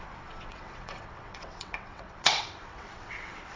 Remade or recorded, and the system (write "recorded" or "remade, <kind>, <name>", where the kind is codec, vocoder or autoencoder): remade, vocoder, WaveNeXt